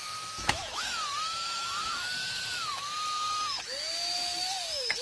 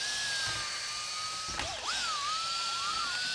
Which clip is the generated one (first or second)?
first